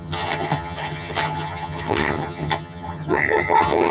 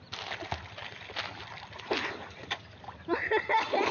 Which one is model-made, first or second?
first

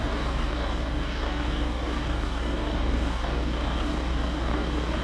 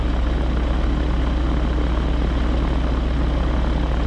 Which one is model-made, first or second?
first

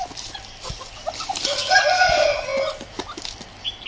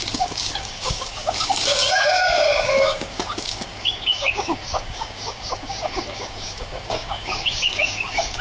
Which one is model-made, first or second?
second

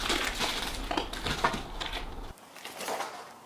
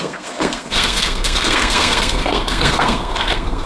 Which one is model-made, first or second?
second